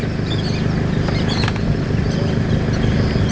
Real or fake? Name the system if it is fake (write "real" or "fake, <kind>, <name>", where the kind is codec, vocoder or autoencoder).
real